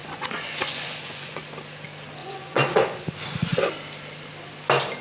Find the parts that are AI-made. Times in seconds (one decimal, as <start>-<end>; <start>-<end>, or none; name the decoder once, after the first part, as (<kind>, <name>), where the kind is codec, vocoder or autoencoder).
0.0-1.4 (vocoder, Vocos); 2.2-3.0